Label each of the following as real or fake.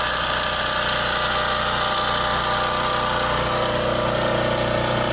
real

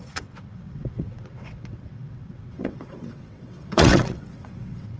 fake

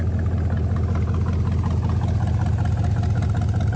real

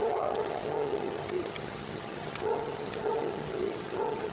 fake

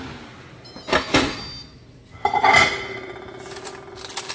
real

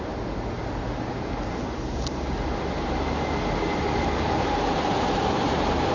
real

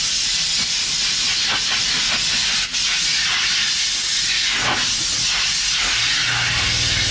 real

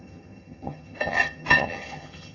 fake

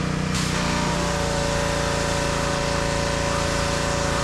real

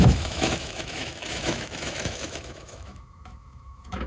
fake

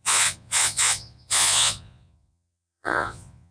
fake